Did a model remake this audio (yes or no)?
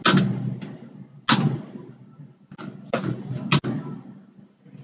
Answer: no